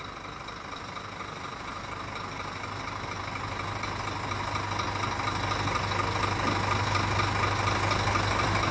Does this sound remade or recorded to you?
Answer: recorded